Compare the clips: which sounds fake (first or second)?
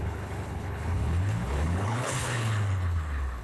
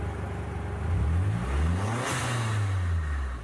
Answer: first